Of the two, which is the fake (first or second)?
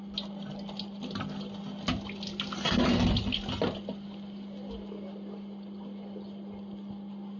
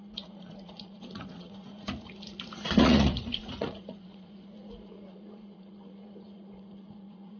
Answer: second